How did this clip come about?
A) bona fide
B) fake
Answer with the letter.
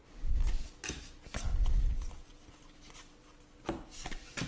A